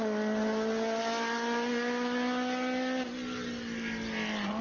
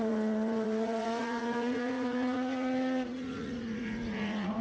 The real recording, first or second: first